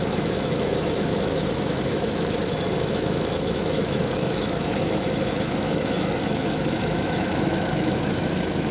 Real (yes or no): no